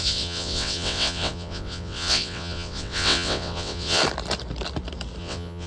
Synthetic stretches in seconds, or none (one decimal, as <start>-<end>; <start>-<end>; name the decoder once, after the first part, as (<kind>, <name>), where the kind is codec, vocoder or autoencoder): 0.0-4.0 (vocoder, WaveNeXt); 5.2-5.7